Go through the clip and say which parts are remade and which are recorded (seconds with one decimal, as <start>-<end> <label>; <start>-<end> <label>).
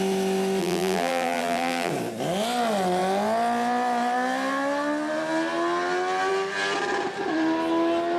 0.0-0.6 recorded; 0.6-1.9 remade; 1.9-8.2 recorded